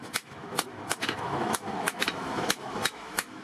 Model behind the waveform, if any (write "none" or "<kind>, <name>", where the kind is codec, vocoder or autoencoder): autoencoder, DAC-VAE